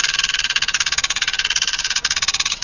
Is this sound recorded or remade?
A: remade